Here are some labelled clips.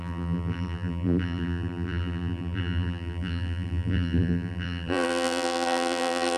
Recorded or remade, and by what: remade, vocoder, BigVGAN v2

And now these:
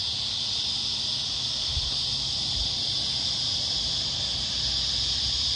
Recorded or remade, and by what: recorded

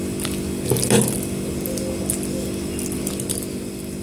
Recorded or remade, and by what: recorded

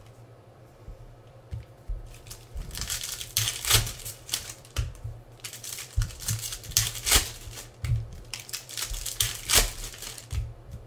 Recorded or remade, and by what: remade, vocoder, BigVGAN v2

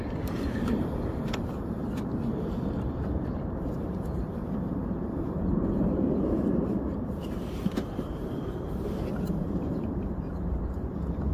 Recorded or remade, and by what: remade, vocoder, BigVGAN v2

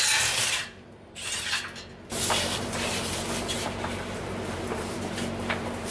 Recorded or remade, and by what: remade, vocoder, BigVGAN v2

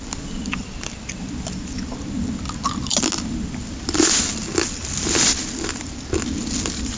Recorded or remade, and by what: recorded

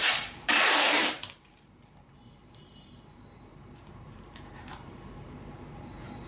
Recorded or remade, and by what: remade, vocoder, BigVGAN v2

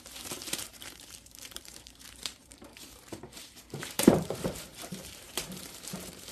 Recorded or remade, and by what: remade, vocoder, BigVGAN v2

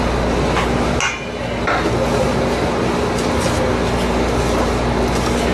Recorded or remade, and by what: recorded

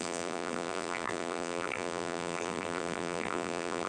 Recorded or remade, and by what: remade, vocoder, BigVGAN v2